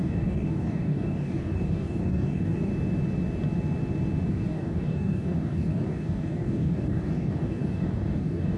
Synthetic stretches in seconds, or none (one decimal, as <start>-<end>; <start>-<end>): 0.0-2.7; 4.3-8.6